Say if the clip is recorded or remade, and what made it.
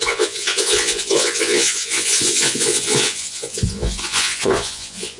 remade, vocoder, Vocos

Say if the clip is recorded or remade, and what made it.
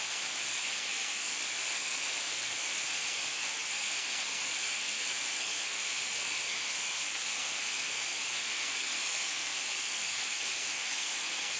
remade, codec, SNAC